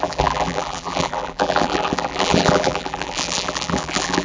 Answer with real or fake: fake